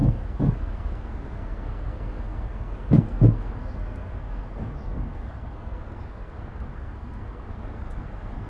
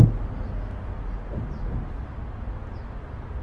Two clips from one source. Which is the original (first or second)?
second